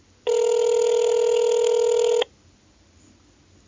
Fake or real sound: real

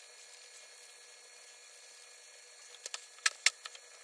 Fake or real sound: real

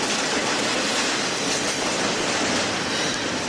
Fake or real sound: real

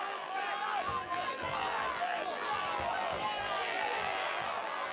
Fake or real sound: fake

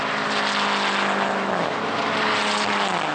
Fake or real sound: real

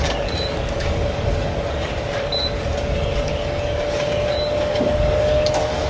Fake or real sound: fake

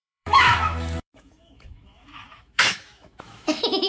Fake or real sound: fake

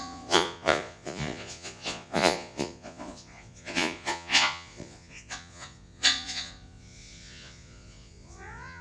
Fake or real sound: fake